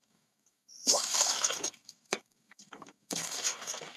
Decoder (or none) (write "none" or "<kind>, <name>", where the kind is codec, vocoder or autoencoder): codec, DAC